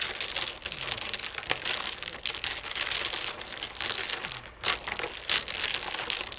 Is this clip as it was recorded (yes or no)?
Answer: yes